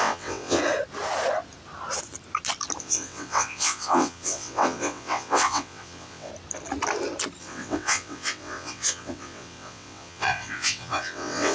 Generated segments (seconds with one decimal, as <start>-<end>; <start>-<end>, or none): 0.0-0.6; 2.8-6.3; 7.4-11.5